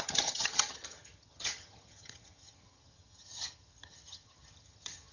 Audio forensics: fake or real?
fake